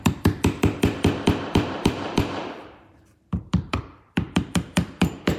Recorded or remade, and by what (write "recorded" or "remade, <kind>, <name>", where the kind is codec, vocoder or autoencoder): remade, vocoder, BigVGAN v2